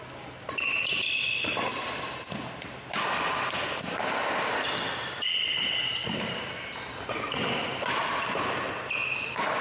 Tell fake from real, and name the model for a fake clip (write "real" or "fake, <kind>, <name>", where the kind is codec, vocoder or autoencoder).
real